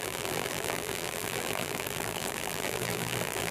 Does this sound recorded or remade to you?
remade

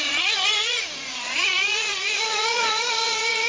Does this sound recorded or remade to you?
remade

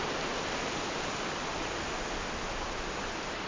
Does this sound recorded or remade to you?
recorded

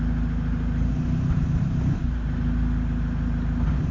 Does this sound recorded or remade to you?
recorded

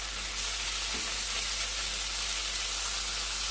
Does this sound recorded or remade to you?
recorded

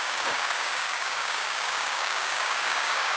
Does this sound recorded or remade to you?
remade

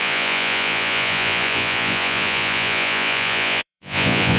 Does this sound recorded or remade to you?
remade